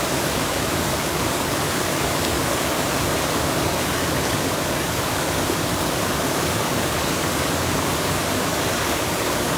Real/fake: fake